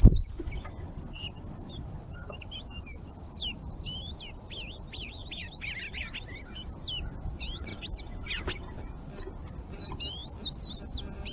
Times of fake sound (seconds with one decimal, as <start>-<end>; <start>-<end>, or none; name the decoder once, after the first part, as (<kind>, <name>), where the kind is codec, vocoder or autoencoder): 0.0-7.7 (vocoder, BigVGAN v2); 9.5-10.2; 10.8-11.3